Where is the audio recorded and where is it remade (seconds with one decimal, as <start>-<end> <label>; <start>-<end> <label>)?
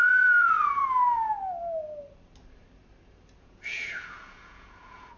0.0-0.8 remade; 0.8-3.4 recorded; 3.4-5.2 remade